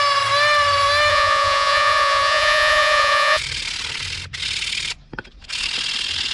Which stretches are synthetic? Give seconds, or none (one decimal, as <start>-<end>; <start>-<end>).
1.1-3.4